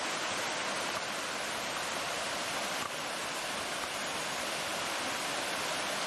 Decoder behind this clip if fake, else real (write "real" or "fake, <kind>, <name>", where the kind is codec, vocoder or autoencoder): real